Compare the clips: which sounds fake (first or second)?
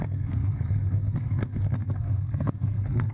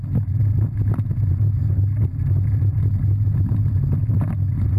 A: first